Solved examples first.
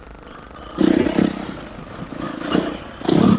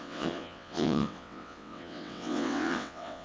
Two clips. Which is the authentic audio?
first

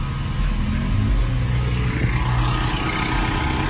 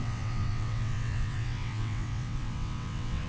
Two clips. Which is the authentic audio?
first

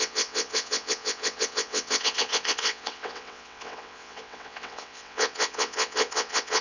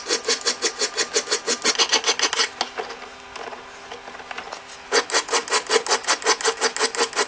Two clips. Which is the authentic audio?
second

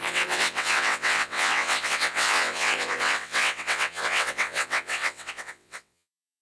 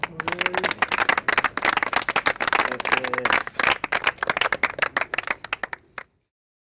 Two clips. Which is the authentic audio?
second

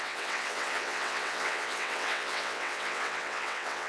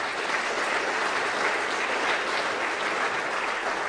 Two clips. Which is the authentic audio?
second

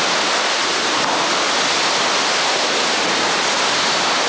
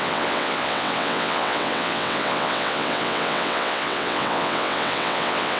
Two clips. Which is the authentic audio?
first